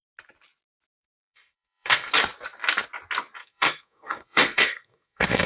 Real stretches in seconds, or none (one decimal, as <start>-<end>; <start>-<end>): 0.0-1.0; 2.1-3.4